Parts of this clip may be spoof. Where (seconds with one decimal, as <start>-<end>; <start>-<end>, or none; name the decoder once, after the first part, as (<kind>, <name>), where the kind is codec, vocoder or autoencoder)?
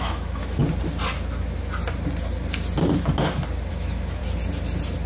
0.0-0.6 (autoencoder, DAC-VAE); 3.7-4.2